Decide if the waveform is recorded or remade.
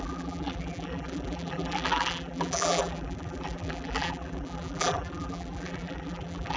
remade